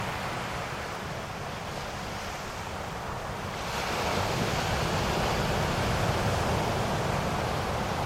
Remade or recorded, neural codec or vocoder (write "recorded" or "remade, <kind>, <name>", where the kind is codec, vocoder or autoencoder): recorded